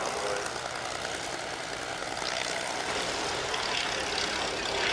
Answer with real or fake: real